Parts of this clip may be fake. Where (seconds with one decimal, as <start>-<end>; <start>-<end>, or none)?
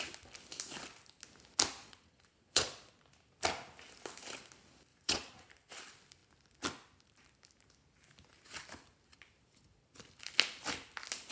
1.8-3.0; 4.9-5.5